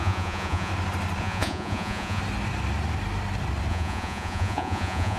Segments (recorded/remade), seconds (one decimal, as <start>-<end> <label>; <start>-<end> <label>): 0.0-0.7 remade; 0.7-1.2 recorded; 1.2-2.2 remade; 2.2-3.7 recorded; 3.7-5.2 remade